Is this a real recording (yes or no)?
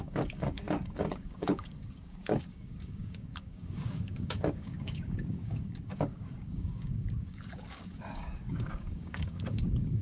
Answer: no